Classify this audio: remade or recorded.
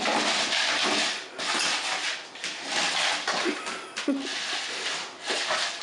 recorded